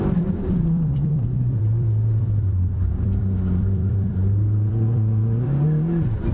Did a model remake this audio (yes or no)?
yes